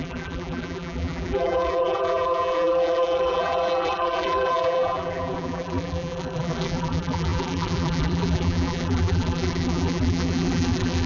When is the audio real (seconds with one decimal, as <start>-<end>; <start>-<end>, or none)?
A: none